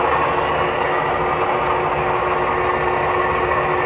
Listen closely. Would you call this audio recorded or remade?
recorded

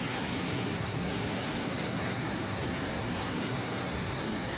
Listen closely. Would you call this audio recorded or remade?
remade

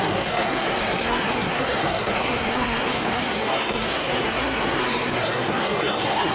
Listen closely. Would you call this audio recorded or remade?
remade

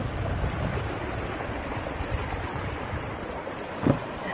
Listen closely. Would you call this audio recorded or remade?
recorded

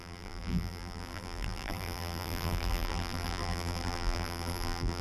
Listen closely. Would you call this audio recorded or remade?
remade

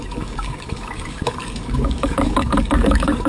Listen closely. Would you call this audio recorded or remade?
remade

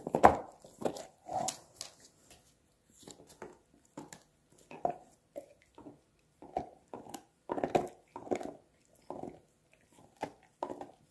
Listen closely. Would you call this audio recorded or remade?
recorded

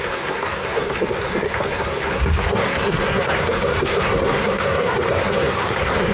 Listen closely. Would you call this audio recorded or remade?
remade